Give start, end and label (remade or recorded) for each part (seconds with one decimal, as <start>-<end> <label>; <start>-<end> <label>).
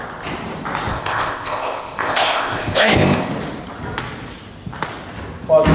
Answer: 0.0-0.9 recorded; 0.9-3.3 remade; 3.3-5.7 recorded